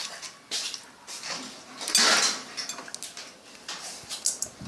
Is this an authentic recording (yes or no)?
yes